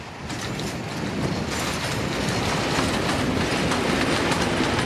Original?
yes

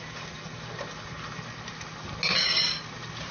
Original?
yes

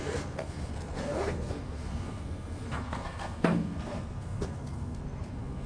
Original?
no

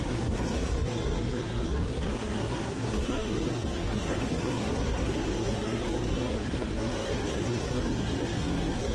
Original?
no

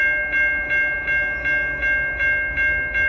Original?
yes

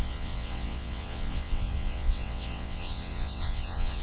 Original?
no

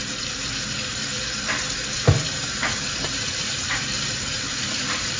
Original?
no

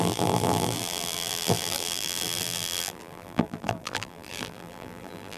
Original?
no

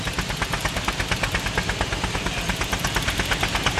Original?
yes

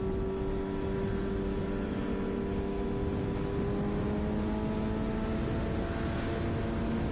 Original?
yes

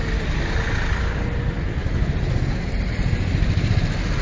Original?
yes